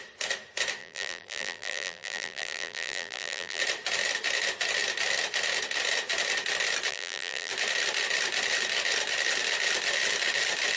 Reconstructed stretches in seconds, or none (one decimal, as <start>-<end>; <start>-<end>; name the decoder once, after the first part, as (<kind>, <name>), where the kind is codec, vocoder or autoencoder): 0.8-3.6 (vocoder, BigVGAN v2); 6.9-7.5